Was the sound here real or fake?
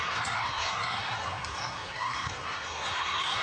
fake